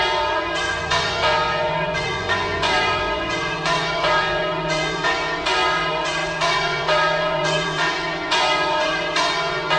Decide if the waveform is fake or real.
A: fake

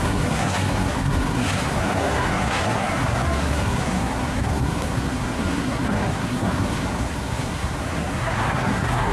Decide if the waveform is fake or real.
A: fake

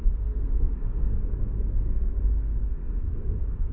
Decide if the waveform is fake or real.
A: fake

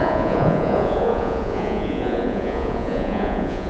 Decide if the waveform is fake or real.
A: fake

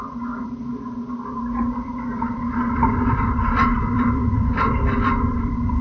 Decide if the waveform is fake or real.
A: fake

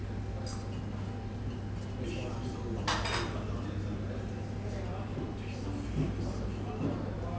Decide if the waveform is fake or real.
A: real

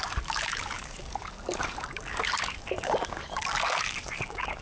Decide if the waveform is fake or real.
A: fake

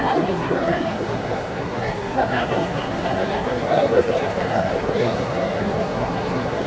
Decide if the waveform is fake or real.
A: fake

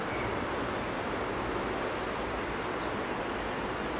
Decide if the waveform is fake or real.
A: real